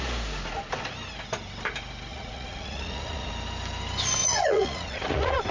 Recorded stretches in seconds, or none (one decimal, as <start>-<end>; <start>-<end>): 0.0-2.1; 3.3-4.2